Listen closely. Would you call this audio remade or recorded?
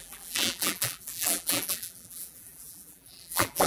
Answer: remade